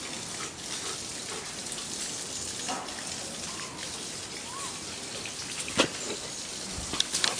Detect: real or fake real